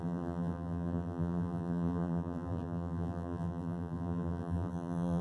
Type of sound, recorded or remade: remade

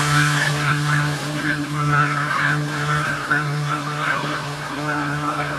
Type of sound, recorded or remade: remade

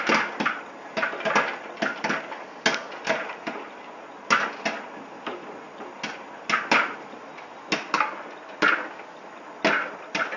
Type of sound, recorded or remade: recorded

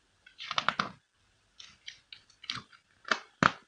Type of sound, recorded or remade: recorded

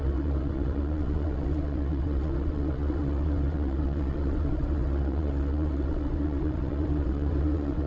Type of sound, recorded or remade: remade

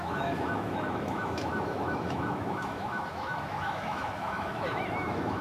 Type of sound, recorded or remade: remade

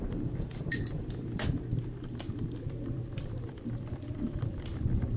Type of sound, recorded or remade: remade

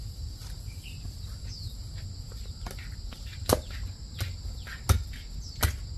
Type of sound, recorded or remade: recorded